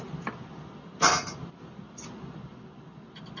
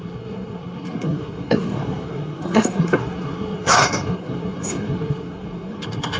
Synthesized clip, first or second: second